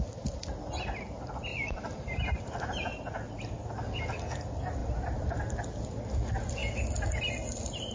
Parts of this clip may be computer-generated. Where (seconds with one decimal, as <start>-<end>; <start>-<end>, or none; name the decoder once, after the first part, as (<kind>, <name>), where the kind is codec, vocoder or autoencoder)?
1.5-2.4 (vocoder, BigVGAN v2); 4.8-5.4